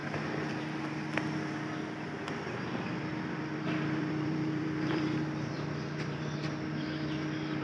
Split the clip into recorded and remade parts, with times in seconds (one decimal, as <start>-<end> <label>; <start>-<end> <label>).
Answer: 0.0-0.8 remade; 0.8-3.1 recorded; 3.1-7.6 remade